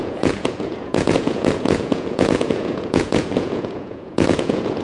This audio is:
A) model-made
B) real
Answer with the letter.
A